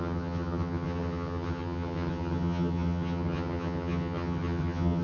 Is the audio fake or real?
fake